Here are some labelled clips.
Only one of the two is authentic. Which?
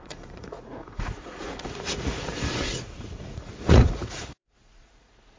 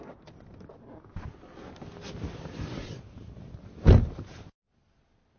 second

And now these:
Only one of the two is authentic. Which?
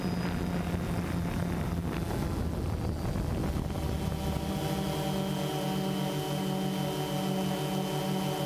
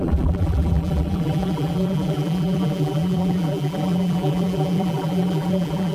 first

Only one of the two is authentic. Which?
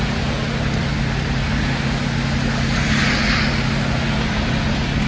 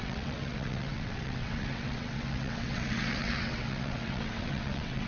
first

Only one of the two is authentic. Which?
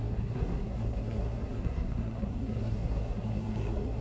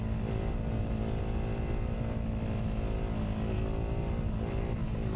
second